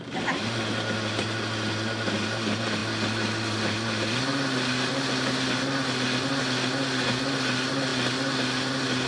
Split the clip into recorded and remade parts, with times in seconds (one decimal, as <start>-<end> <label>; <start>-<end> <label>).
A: 0.0-9.1 recorded